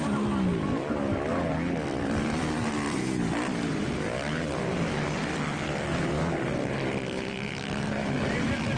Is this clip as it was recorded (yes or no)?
yes